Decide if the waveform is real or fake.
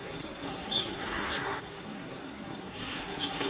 fake